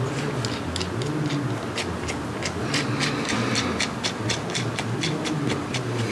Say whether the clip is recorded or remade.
recorded